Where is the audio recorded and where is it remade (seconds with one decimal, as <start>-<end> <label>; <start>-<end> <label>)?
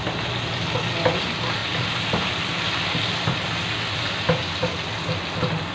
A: 0.0-5.7 recorded